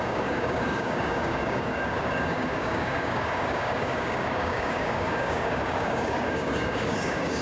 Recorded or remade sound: remade